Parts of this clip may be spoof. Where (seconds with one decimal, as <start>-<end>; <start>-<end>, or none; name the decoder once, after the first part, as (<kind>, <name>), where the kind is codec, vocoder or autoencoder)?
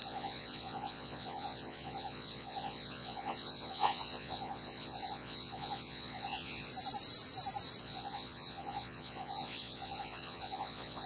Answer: 0.0-6.7 (vocoder, Vocos); 7.8-11.1